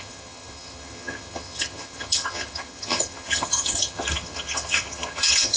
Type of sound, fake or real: fake